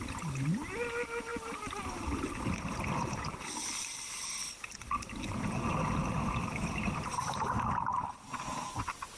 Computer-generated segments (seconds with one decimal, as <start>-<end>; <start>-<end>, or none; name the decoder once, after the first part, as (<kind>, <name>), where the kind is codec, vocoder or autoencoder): none